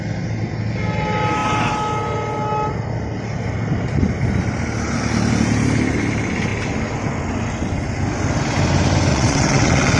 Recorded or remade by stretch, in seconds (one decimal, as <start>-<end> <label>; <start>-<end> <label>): 0.0-9.1 recorded; 9.1-10.0 remade